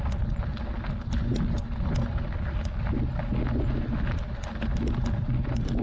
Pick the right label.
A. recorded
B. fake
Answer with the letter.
A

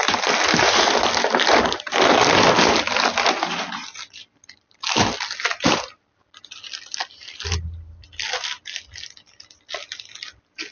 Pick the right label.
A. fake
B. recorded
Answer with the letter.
B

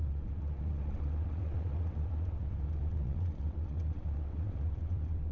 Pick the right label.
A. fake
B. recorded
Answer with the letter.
A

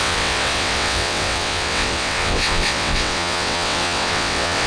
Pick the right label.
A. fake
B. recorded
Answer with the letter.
A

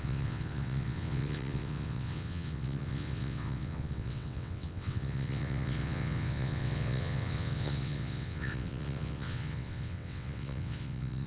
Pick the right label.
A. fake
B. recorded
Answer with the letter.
A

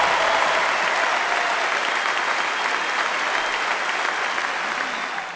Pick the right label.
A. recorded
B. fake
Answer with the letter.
A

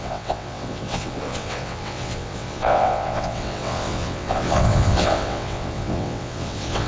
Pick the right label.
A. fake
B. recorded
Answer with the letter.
A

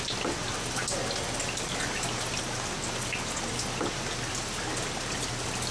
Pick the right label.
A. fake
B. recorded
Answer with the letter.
B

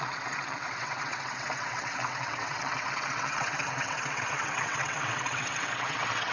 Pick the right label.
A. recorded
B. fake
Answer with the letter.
B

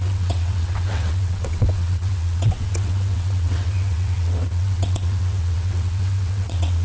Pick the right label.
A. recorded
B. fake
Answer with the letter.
B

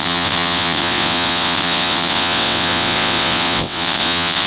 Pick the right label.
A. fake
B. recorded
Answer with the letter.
A